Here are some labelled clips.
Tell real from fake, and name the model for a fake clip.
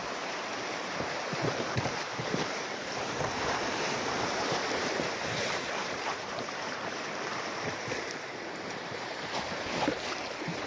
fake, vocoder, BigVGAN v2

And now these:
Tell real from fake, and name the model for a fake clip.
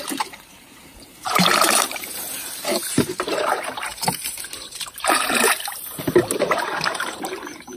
fake, vocoder, BigVGAN v2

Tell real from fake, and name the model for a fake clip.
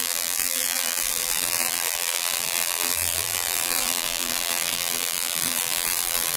fake, vocoder, BigVGAN v2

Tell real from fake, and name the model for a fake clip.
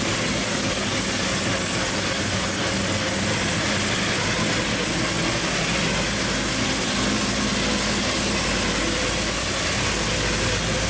real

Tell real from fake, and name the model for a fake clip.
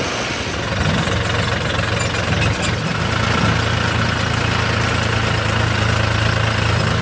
real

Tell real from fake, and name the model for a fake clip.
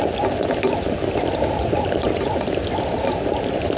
real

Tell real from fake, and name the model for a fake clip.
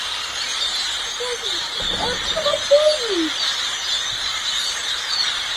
real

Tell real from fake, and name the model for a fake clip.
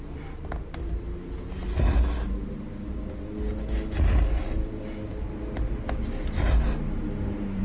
real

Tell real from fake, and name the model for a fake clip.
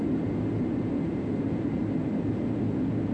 real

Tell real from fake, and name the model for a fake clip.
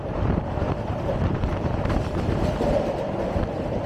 fake, vocoder, BigVGAN v2